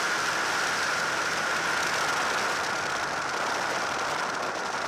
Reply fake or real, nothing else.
real